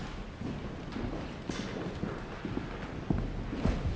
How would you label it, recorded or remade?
recorded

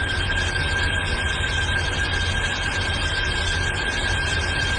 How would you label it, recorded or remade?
recorded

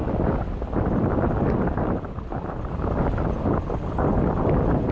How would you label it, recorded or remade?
recorded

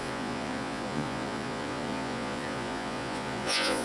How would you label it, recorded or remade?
remade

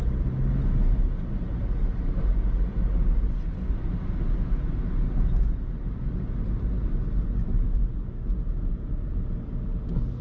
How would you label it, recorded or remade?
recorded